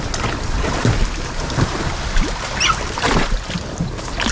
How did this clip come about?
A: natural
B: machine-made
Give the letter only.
A